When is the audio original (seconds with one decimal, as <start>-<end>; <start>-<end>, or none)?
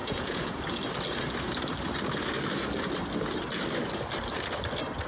0.6-5.1